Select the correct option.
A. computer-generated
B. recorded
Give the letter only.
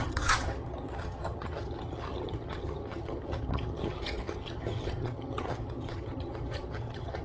A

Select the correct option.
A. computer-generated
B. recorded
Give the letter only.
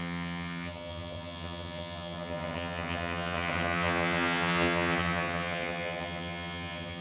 A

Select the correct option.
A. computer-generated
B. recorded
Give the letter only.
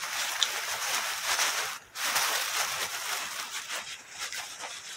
A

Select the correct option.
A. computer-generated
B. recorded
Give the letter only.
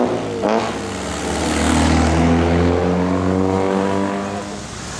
B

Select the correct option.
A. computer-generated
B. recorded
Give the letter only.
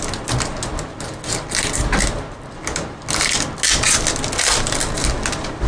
B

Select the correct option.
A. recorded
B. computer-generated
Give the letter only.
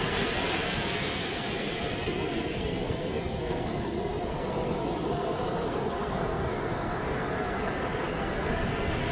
B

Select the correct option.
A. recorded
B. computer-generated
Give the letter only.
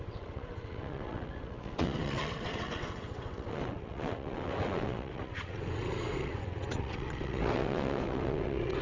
B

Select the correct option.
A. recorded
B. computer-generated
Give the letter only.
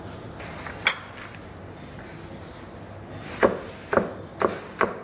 A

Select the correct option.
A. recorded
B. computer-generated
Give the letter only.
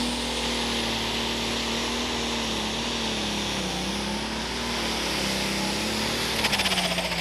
A